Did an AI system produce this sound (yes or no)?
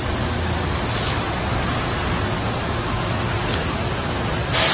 no